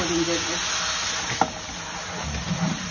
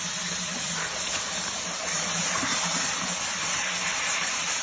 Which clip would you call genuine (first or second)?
first